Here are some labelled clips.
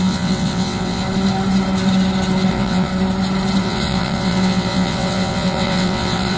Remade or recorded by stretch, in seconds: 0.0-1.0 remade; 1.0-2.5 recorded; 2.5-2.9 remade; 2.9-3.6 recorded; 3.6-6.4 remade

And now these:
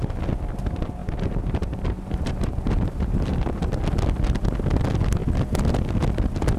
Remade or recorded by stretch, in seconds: 0.0-1.0 recorded; 1.0-3.8 remade; 3.8-6.6 recorded

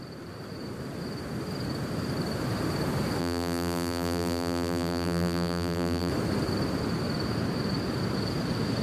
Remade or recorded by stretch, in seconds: 0.0-3.2 recorded; 3.2-6.1 remade; 6.1-8.8 recorded

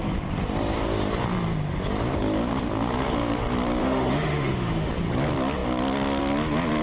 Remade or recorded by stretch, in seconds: 0.0-3.8 recorded; 3.8-4.9 remade; 4.9-6.8 recorded

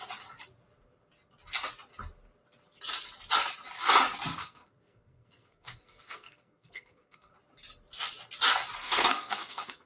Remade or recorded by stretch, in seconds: 0.0-4.3 recorded; 4.3-7.3 remade; 7.3-8.8 recorded; 8.8-9.9 remade

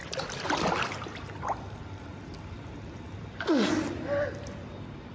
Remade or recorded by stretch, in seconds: 0.0-5.1 remade